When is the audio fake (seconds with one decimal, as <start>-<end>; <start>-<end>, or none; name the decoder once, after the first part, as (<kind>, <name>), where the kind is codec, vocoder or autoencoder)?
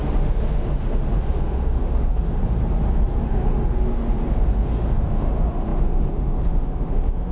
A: 0.0-2.4 (autoencoder, DAC-VAE); 3.2-7.3